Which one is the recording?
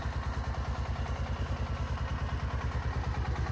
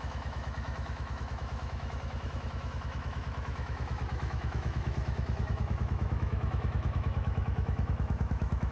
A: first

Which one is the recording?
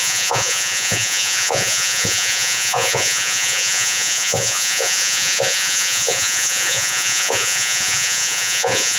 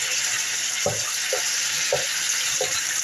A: second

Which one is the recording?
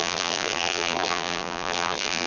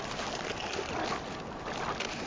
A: second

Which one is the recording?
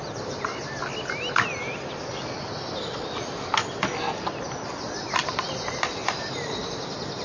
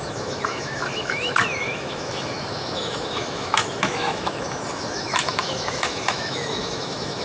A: first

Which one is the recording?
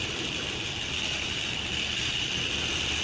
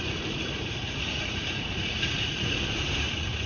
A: first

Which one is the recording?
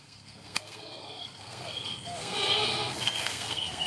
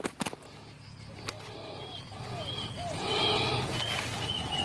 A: second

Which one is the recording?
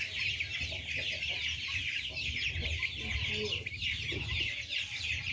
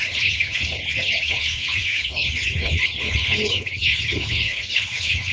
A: first